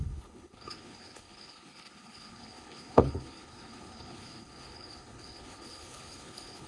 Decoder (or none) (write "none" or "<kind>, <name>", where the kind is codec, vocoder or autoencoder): codec, HILCodec